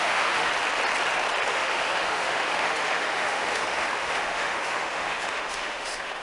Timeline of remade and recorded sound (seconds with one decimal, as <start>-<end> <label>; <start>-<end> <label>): 0.0-0.5 remade; 0.5-1.5 recorded; 1.5-6.2 remade